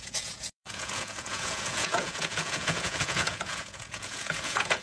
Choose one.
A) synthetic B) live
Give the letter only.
A